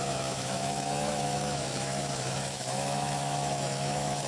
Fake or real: fake